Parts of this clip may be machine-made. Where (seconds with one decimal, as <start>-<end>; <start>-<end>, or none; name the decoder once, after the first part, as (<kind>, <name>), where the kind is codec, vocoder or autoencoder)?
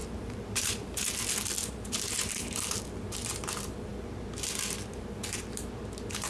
0.0-1.1 (vocoder, BigVGAN v2); 1.6-2.8